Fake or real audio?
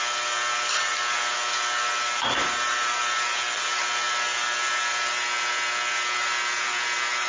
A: real